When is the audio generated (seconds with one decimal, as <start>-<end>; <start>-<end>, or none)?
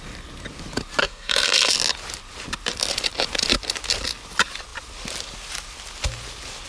1.0-1.7